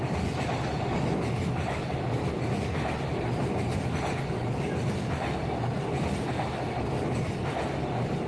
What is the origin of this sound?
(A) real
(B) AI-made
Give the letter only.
A